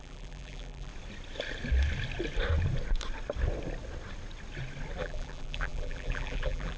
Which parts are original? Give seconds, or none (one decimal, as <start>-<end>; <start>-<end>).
0.9-5.0